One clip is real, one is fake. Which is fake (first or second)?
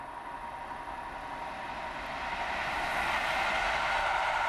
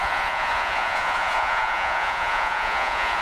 second